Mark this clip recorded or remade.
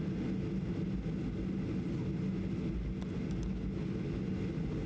recorded